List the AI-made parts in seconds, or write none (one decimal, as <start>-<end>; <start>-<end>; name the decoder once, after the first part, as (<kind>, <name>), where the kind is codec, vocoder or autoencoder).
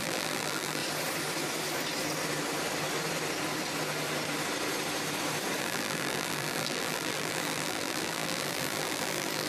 0.0-0.8 (vocoder, BigVGAN v2); 5.6-9.5